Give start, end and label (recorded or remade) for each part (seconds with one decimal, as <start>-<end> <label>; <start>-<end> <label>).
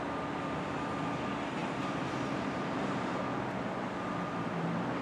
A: 0.0-1.6 recorded; 1.6-3.2 remade; 3.2-5.0 recorded